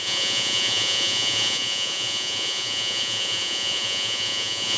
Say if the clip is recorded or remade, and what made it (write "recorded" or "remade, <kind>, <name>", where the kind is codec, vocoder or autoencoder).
remade, vocoder, Vocos